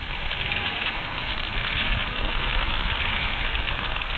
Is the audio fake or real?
fake